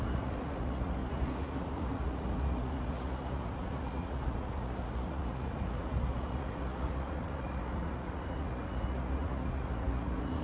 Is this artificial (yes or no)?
yes